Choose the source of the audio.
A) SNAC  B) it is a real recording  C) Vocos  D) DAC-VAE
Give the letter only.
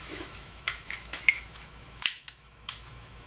D